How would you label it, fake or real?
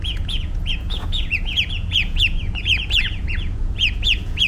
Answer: fake